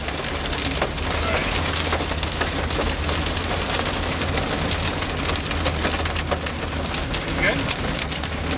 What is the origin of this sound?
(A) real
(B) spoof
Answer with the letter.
A